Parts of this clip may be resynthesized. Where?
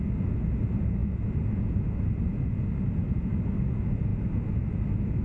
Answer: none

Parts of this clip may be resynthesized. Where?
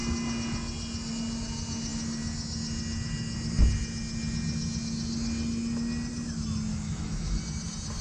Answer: 6.7-7.4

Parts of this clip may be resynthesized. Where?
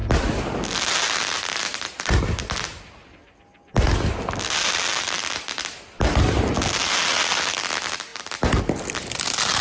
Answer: none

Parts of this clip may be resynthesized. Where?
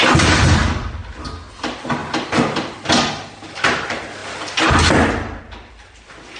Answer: 0.0-2.0; 3.4-6.4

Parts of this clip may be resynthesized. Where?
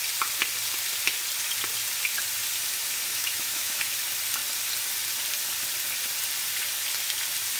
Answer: 3.1-3.9